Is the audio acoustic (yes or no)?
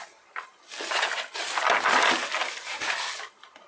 yes